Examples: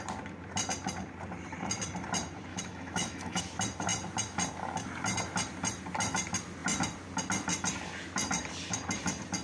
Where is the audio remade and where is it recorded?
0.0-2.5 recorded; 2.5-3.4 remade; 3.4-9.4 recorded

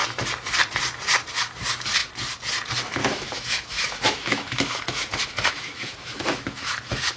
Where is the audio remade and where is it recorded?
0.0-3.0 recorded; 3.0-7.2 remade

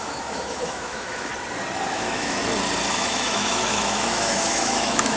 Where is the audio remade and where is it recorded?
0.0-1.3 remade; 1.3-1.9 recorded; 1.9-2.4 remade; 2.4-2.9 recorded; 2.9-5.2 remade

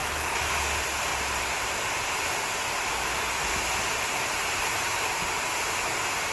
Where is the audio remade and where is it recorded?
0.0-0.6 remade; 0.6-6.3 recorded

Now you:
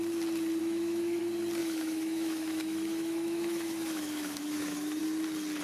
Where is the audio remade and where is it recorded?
0.0-0.6 recorded; 0.6-1.2 remade; 1.2-1.6 recorded; 1.6-5.0 remade; 5.0-5.6 recorded

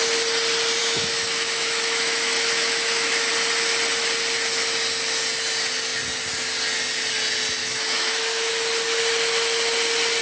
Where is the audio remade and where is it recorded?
0.0-0.8 recorded; 0.8-3.3 remade; 3.3-7.6 recorded; 7.6-8.5 remade; 8.5-10.2 recorded

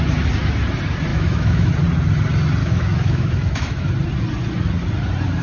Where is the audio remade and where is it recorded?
0.0-1.1 recorded; 1.1-1.7 remade; 1.7-2.6 recorded; 2.6-3.9 remade; 3.9-5.4 recorded

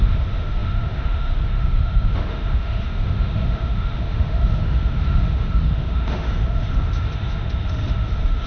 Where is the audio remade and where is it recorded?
0.0-8.5 remade